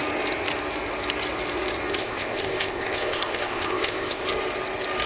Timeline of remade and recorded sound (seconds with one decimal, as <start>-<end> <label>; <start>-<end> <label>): 0.0-1.9 recorded; 1.9-4.3 remade; 4.3-5.1 recorded